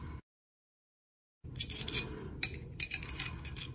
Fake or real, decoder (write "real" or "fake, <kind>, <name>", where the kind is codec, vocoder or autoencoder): real